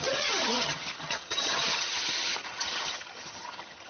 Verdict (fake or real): fake